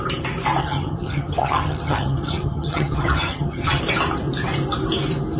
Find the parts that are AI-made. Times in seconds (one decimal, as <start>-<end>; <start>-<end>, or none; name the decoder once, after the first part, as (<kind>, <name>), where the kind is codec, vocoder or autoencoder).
0.6-3.8 (vocoder, HiFi-GAN)